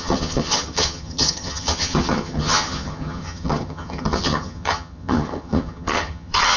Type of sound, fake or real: fake